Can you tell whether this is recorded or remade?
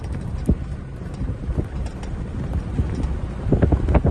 recorded